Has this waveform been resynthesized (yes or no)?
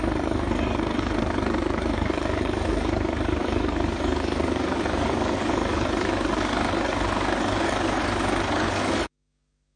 yes